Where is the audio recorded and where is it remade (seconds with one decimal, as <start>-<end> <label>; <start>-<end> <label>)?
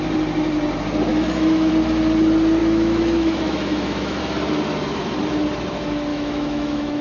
0.0-1.1 recorded; 1.1-1.7 remade; 1.7-2.6 recorded; 2.6-4.2 remade; 4.2-6.1 recorded; 6.1-7.0 remade